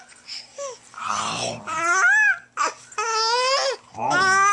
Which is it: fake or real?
real